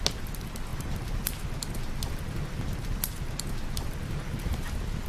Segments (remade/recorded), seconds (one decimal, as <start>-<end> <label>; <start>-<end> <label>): 0.0-5.1 recorded